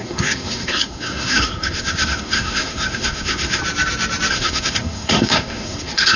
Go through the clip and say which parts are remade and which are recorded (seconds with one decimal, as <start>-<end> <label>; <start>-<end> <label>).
0.0-3.6 remade; 3.6-4.3 recorded; 4.3-6.2 remade